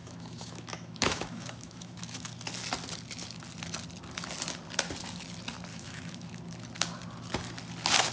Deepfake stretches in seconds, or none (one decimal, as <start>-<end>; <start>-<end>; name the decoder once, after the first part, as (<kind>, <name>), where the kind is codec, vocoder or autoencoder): 0.0-2.3 (autoencoder, DAC-VAE); 5.7-6.4